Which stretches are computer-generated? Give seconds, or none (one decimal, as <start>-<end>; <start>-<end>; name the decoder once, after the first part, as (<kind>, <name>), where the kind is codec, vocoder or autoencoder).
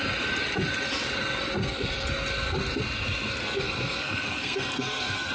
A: 1.6-2.1 (codec, SNAC); 3.4-5.3